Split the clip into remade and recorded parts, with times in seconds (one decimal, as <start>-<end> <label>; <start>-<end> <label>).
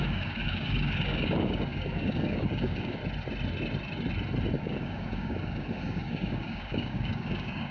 0.0-3.0 remade; 3.0-4.6 recorded; 4.6-7.7 remade